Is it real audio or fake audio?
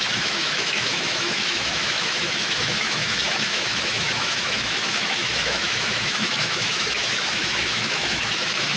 fake